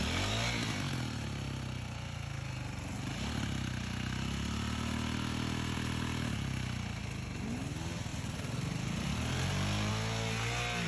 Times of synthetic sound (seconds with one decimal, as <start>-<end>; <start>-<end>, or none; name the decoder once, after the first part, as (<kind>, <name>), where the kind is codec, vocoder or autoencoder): 8.1-9.9 (vocoder, BigVGAN v2)